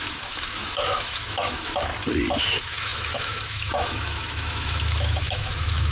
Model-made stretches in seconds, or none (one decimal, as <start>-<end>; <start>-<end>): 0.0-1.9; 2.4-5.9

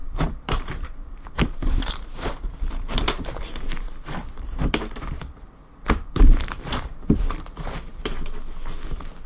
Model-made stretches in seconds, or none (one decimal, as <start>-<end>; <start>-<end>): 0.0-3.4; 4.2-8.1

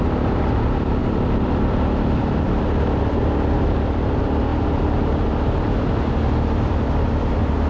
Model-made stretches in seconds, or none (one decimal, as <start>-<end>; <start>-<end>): 1.0-1.7

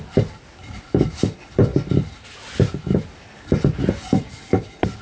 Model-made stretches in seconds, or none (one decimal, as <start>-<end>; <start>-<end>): none

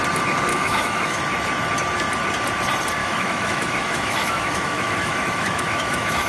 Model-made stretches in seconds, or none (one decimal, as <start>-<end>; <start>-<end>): 0.5-1.2; 3.0-6.3

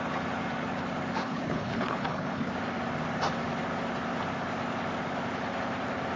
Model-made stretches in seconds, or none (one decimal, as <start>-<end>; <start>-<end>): 1.2-2.5

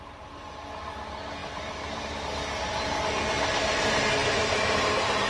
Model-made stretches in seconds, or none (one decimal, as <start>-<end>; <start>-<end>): none

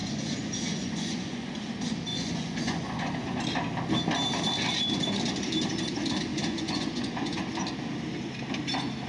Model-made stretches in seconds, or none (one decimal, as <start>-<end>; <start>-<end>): 0.0-1.5; 2.1-3.4; 6.3-7.4